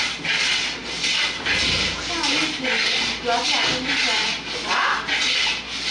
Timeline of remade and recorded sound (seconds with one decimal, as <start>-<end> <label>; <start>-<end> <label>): 0.0-5.9 recorded